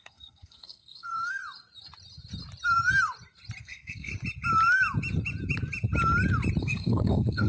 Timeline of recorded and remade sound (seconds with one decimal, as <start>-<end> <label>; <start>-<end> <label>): 0.0-1.4 remade; 1.4-3.6 recorded; 3.6-4.1 remade; 4.1-6.6 recorded; 6.6-7.5 remade